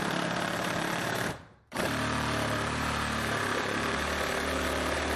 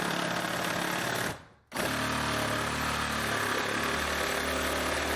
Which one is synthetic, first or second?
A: first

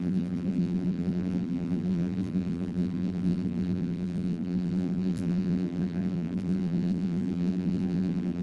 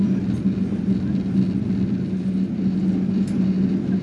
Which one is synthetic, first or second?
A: first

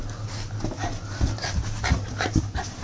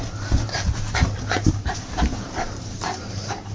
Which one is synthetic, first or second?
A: second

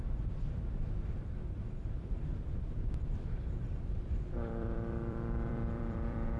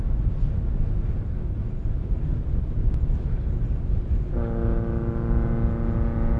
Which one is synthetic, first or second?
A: first